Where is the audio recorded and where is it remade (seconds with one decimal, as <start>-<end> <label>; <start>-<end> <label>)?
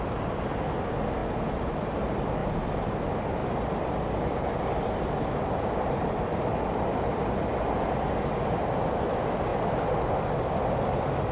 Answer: 0.0-2.4 recorded; 2.4-3.0 remade; 3.0-3.4 recorded; 3.4-7.6 remade; 7.6-9.5 recorded; 9.5-10.0 remade; 10.0-11.3 recorded